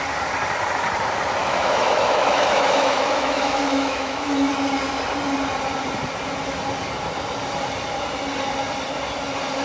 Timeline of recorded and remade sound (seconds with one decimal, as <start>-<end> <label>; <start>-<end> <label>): 0.0-1.4 recorded; 1.4-4.5 remade; 4.5-9.6 recorded